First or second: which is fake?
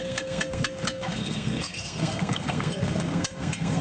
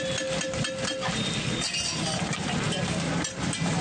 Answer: first